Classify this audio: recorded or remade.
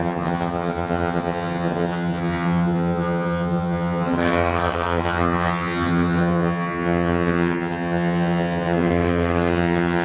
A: remade